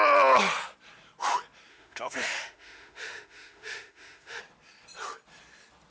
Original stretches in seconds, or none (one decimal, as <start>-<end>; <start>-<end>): 0.0-1.7; 4.4-5.9